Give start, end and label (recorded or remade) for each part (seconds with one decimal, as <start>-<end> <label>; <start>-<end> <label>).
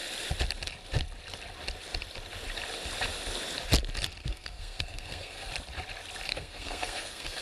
0.0-4.2 recorded; 4.2-5.5 remade; 5.5-6.3 recorded; 6.3-7.4 remade